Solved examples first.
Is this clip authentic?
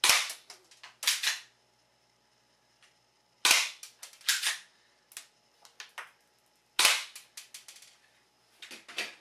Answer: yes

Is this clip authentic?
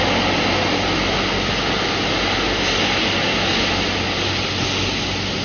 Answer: yes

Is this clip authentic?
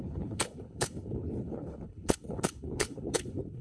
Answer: no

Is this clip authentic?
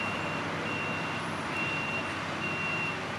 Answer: no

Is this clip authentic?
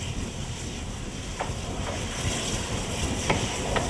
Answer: yes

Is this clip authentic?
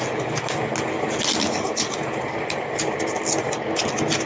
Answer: yes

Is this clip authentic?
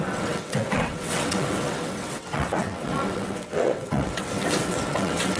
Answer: no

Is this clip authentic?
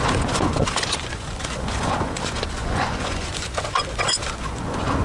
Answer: no